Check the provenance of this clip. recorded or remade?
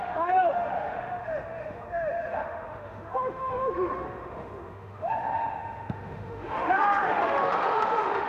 remade